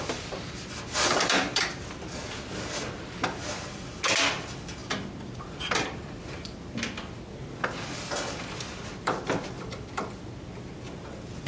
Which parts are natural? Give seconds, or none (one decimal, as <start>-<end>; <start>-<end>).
0.0-11.5